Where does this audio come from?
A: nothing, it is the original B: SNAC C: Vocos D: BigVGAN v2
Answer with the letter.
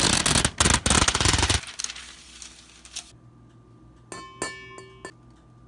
A